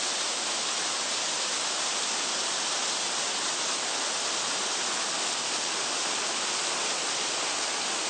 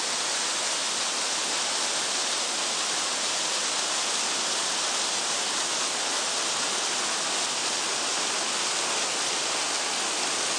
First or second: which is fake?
first